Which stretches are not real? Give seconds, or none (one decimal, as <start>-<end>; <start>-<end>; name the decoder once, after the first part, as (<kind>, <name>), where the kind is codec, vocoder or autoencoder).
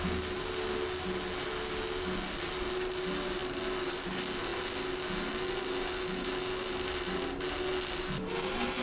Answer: none